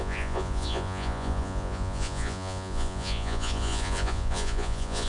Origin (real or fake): fake